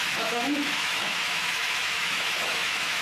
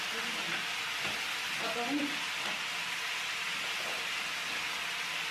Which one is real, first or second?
second